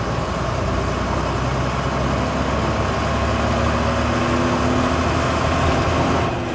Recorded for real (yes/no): yes